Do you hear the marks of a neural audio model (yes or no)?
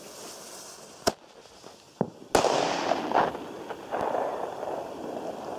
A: no